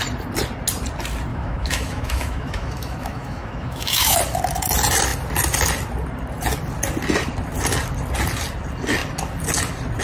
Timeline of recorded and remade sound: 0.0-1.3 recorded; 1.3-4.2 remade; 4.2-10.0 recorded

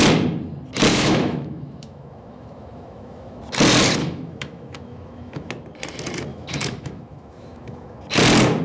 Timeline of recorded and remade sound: 0.0-0.9 recorded; 0.9-3.4 remade; 3.4-4.0 recorded; 4.0-5.5 remade; 5.5-6.3 recorded; 6.3-8.0 remade; 8.0-8.6 recorded

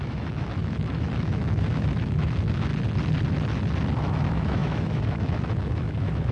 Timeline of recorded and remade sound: 0.0-2.7 remade; 2.7-4.0 recorded; 4.0-6.3 remade

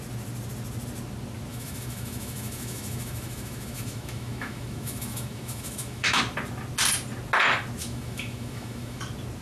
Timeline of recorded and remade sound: 0.0-1.5 recorded; 1.5-6.2 remade; 6.2-7.8 recorded; 7.8-9.0 remade; 9.0-9.4 recorded

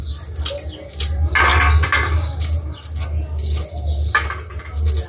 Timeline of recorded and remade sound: 0.0-5.1 recorded